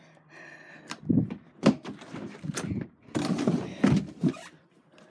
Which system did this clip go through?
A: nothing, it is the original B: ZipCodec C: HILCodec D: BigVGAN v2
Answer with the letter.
D